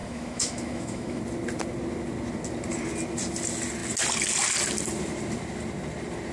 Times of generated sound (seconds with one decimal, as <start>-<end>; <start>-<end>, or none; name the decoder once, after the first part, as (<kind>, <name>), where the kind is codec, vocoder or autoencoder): 0.0-1.2 (autoencoder, DAC-VAE)